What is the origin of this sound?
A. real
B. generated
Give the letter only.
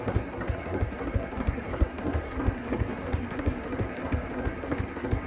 B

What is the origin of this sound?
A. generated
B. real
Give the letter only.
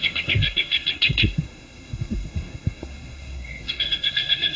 A